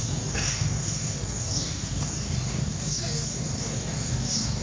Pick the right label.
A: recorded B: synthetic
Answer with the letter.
B